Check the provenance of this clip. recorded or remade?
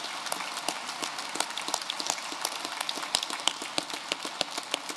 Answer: recorded